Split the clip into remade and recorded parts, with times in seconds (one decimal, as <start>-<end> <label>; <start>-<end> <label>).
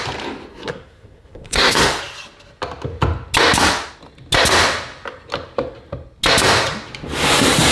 0.0-0.5 recorded; 0.5-2.0 remade; 2.0-7.7 recorded